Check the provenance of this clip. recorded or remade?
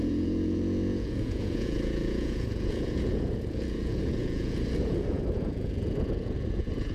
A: remade